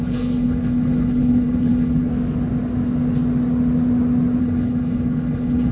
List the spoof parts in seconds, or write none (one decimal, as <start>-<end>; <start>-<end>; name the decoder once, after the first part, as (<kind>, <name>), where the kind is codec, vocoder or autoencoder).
0.0-2.1 (codec, HILCodec); 4.4-5.7